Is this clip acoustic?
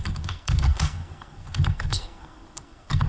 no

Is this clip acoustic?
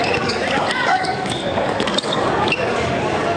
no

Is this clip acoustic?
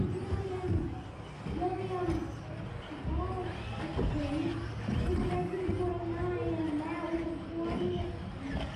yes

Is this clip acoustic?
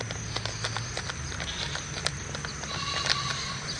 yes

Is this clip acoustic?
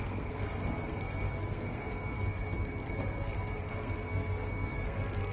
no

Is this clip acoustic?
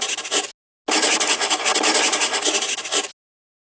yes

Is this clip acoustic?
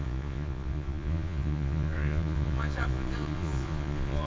no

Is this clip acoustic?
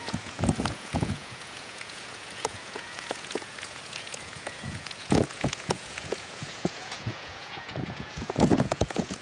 no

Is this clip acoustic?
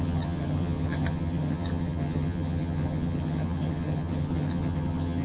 no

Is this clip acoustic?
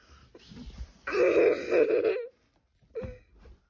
yes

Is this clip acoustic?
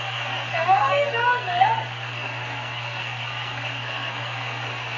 no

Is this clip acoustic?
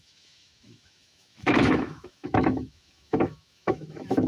no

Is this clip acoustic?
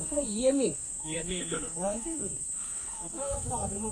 no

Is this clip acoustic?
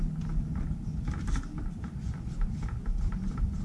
yes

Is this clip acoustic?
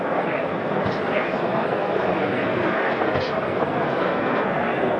no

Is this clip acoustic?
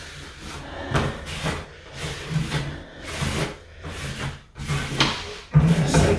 yes